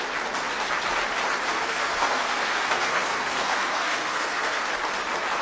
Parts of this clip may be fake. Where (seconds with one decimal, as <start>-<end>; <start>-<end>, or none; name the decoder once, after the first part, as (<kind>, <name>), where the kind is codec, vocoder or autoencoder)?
1.5-4.7 (codec, SNAC)